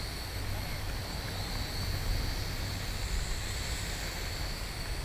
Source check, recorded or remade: recorded